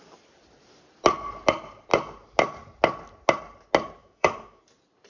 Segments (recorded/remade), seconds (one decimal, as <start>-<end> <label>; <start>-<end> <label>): 0.0-4.0 recorded; 4.0-4.6 remade; 4.6-5.1 recorded

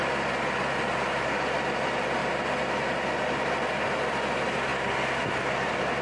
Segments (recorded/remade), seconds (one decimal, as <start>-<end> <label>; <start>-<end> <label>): 0.0-6.0 recorded

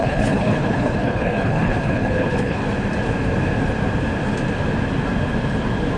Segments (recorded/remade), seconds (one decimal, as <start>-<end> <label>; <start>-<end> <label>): 0.0-2.6 remade; 2.6-6.0 recorded

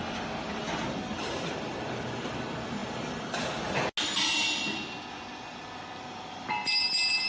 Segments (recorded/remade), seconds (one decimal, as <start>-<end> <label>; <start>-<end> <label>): 0.0-7.3 recorded

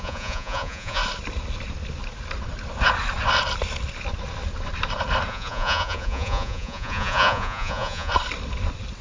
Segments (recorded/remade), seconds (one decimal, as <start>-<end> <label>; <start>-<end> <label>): 0.0-1.0 remade; 1.0-5.3 recorded; 5.3-8.1 remade; 8.1-9.0 recorded

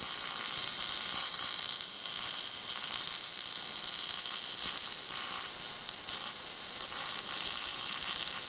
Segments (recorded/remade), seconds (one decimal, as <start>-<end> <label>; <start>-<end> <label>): 0.0-8.5 remade